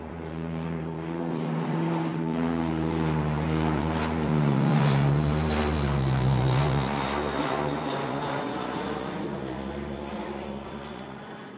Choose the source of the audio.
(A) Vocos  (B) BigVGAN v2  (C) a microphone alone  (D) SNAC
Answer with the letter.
A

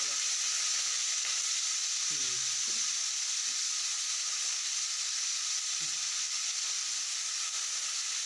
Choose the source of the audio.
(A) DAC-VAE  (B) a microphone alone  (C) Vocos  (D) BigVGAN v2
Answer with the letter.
B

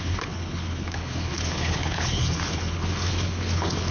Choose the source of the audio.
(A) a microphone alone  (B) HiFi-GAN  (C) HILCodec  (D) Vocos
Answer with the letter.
C